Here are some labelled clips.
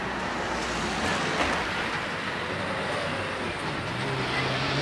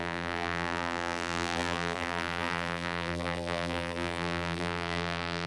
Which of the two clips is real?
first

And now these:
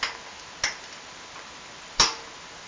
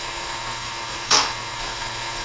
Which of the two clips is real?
first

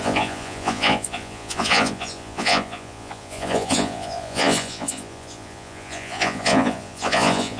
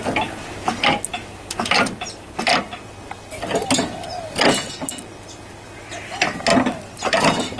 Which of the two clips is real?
second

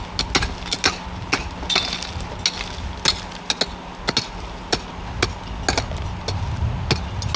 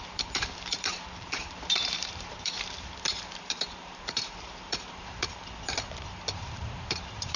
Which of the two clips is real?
first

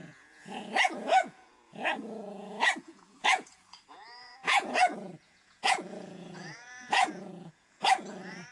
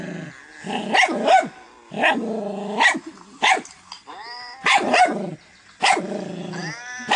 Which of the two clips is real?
second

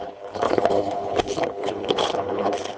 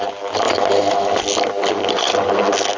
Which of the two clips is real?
second